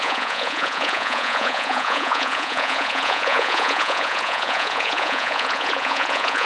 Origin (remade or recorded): remade